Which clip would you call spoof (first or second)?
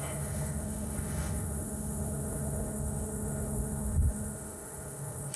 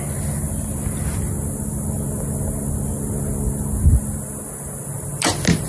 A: first